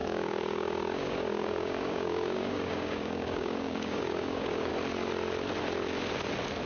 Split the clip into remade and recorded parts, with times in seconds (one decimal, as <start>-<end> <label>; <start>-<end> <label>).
0.0-4.7 remade; 4.7-6.7 recorded